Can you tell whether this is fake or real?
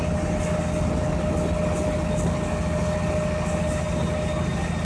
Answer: real